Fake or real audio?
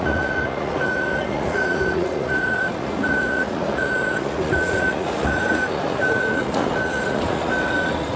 fake